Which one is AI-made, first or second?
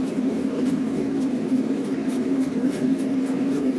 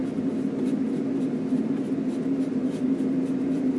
first